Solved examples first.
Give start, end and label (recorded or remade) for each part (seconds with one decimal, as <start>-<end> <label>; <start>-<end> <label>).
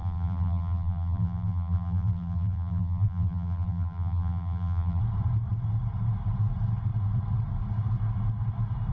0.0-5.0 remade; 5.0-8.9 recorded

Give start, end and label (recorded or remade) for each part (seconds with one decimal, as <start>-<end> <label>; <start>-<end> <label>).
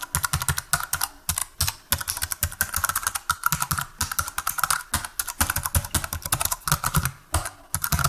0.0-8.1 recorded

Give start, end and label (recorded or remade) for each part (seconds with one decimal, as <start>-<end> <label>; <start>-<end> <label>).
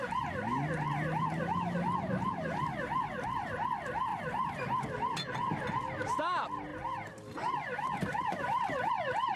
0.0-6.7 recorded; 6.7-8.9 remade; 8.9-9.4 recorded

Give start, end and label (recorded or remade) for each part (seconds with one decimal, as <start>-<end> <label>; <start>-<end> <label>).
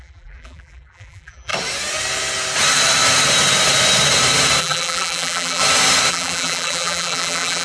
0.0-1.5 remade; 1.5-4.6 recorded; 4.6-5.6 remade; 5.6-6.1 recorded; 6.1-7.6 remade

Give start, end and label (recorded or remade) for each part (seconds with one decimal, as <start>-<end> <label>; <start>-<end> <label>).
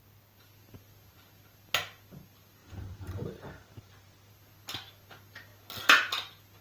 0.0-2.6 recorded; 2.6-4.3 remade; 4.3-6.6 recorded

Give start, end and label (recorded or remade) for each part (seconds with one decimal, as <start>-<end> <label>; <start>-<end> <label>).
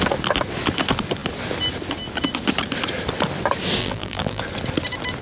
0.0-3.8 recorded; 3.8-4.4 remade; 4.4-5.2 recorded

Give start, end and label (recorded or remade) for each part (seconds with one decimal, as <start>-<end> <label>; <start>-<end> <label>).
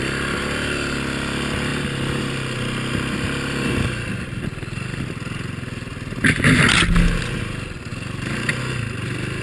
0.0-9.4 recorded